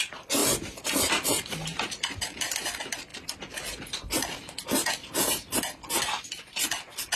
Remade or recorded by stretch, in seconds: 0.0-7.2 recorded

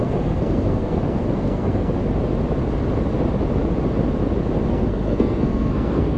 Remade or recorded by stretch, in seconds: 0.0-2.0 remade; 2.0-4.7 recorded; 4.7-6.2 remade

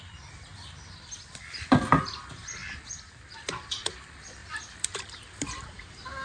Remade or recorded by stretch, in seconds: 0.0-2.6 recorded; 2.6-3.8 remade; 3.8-4.4 recorded; 4.4-5.4 remade; 5.4-6.2 recorded

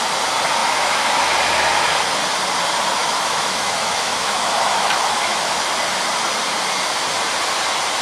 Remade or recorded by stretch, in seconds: 0.0-0.6 recorded; 0.6-1.2 remade; 1.2-3.0 recorded; 3.0-5.7 remade; 5.7-8.0 recorded

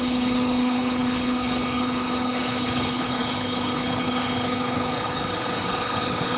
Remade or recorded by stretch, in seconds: 0.0-6.4 remade

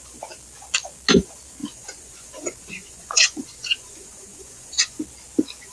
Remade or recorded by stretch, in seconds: 0.0-1.6 recorded; 1.6-5.0 remade; 5.0-5.7 recorded

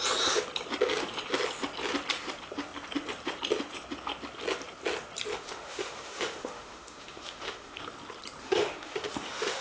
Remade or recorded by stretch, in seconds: 0.0-5.3 recorded; 5.3-7.8 remade; 7.8-8.4 recorded; 8.4-9.6 remade